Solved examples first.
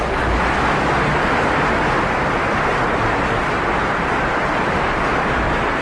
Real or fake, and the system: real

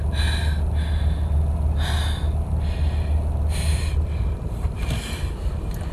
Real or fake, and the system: real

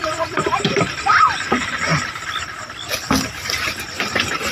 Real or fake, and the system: real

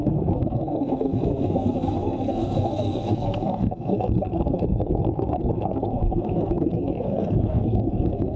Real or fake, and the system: fake, codec, SNAC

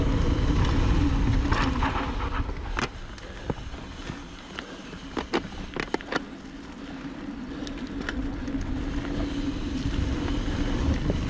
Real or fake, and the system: real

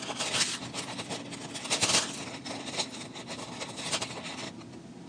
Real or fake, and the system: real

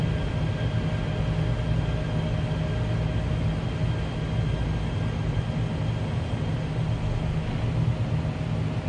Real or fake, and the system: real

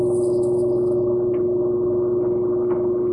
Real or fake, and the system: real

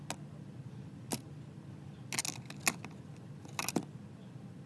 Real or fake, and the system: real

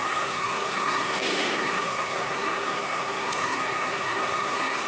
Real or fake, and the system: fake, codec, SNAC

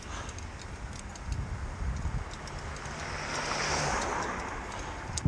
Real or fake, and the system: real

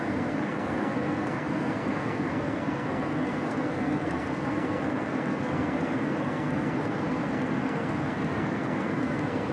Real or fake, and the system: fake, codec, SNAC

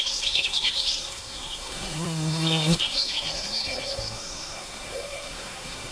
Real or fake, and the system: fake, codec, SNAC